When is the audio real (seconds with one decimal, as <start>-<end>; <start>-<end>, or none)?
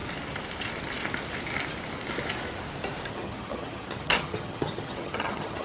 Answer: 0.0-3.1